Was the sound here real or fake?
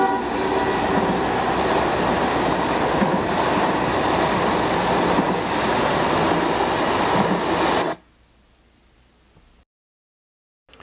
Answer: real